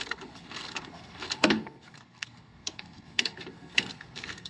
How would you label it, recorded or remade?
remade